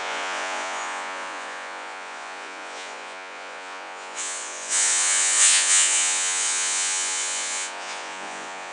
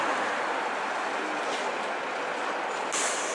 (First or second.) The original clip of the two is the second